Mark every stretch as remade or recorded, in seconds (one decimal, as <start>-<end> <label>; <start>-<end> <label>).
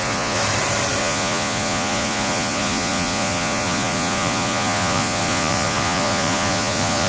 0.0-0.4 remade; 0.4-1.0 recorded; 1.0-7.1 remade